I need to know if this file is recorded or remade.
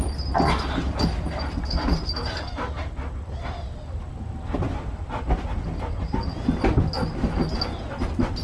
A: recorded